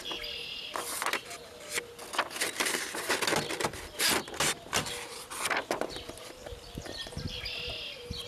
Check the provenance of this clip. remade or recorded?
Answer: recorded